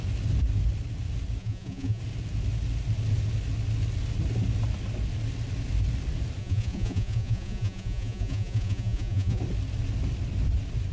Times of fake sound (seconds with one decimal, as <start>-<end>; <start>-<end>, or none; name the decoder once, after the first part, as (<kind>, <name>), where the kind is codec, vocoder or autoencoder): 1.4-2.0 (vocoder, Vocos); 6.4-9.4